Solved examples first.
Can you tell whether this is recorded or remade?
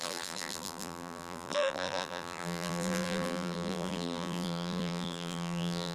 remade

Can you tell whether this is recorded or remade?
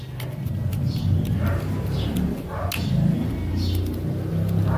recorded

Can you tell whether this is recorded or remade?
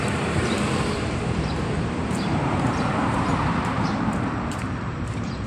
remade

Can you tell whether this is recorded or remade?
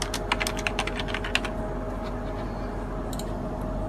recorded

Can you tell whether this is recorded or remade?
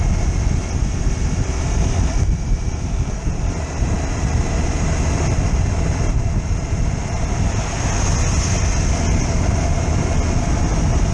recorded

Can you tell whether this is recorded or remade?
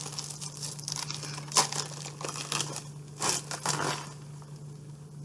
recorded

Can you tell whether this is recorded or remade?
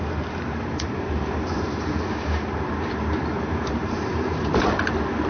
remade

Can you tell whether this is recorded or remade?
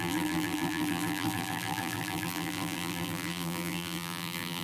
remade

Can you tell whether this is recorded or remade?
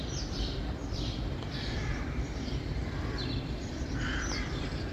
remade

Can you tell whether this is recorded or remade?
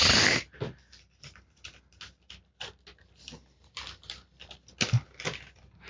recorded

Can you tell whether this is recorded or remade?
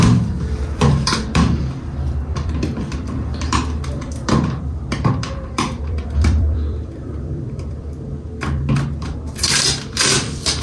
remade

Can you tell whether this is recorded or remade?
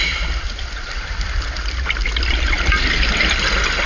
recorded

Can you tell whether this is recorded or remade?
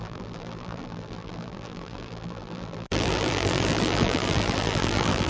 remade